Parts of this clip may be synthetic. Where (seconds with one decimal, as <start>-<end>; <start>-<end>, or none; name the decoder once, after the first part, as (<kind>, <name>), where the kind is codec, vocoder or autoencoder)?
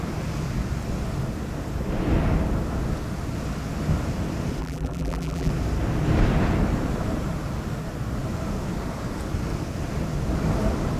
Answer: 4.6-5.5 (vocoder, BigVGAN v2)